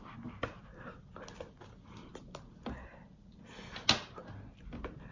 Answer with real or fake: real